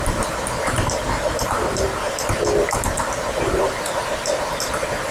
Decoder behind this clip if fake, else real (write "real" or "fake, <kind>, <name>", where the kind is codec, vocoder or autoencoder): real